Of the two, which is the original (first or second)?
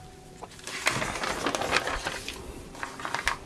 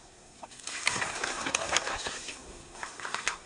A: first